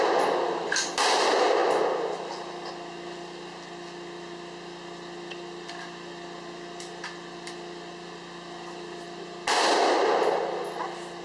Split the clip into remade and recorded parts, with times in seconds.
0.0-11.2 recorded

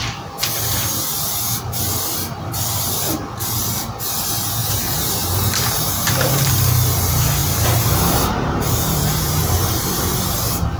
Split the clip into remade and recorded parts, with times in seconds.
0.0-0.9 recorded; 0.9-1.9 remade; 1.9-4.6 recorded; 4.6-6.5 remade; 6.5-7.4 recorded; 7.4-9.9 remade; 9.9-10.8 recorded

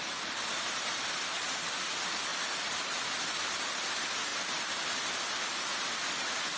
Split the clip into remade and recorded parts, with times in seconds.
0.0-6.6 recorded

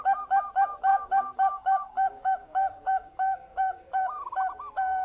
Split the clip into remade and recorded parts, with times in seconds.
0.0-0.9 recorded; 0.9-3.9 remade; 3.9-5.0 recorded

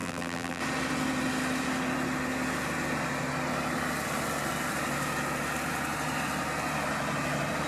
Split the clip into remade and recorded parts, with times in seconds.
0.0-0.6 remade; 0.6-7.7 recorded